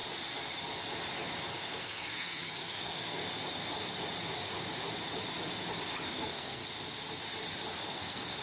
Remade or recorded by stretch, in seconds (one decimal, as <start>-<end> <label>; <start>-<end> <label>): 0.0-1.6 recorded; 1.6-3.2 remade; 3.2-6.1 recorded; 6.1-6.6 remade; 6.6-7.8 recorded; 7.8-8.4 remade